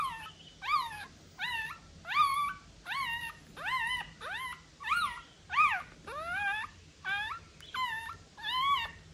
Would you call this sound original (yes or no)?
yes